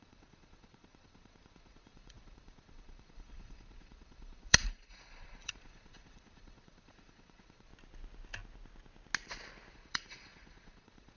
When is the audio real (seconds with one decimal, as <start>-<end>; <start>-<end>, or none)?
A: 7.7-9.7